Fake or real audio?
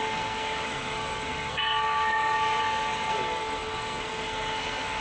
fake